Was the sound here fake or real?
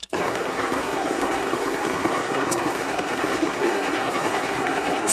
fake